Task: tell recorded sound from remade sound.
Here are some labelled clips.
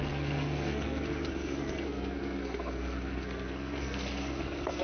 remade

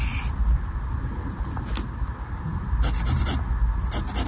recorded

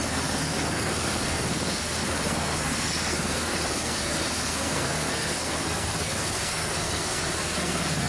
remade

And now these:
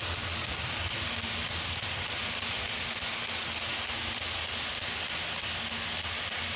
recorded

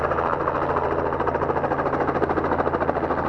recorded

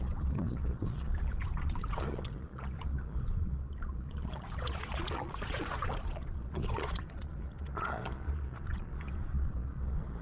remade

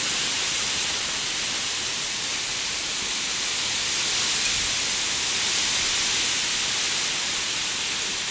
recorded